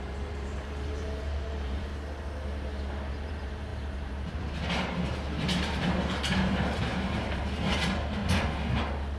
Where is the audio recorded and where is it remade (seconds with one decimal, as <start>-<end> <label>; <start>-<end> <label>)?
0.0-1.9 remade; 1.9-3.3 recorded; 3.3-8.2 remade; 8.2-9.2 recorded